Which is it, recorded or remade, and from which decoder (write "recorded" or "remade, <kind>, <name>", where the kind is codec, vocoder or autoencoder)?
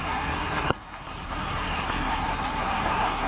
remade, codec, SNAC